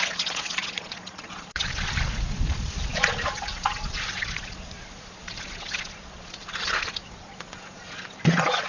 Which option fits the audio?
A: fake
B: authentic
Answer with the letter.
A